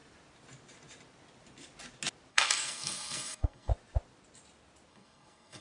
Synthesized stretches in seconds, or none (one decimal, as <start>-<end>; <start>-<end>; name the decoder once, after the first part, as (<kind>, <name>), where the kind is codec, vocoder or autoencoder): 2.3-3.7 (codec, SNAC); 4.9-5.6